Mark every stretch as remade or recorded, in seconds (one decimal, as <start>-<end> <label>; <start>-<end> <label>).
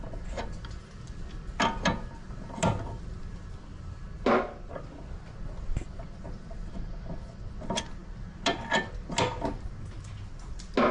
0.0-10.9 recorded